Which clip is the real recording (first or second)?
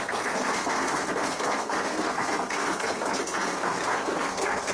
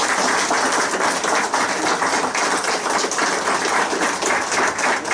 second